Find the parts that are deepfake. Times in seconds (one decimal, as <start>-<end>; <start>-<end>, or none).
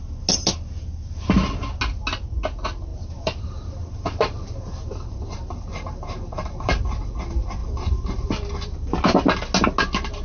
2.9-6.8; 7.6-8.3